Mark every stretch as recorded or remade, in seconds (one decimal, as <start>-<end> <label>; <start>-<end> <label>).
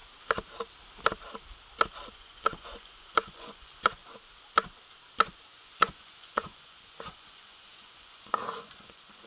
0.0-2.1 recorded; 2.1-4.0 remade; 4.0-5.5 recorded; 5.5-9.3 remade